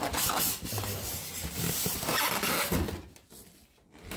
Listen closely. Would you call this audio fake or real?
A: real